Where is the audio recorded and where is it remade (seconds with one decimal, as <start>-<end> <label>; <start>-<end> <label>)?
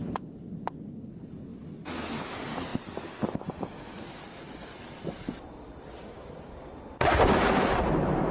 0.0-6.0 recorded; 6.0-6.5 remade; 6.5-8.3 recorded